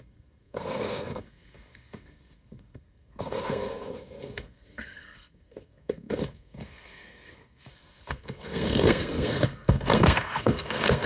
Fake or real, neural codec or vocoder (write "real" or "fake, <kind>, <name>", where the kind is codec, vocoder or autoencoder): fake, codec, SNAC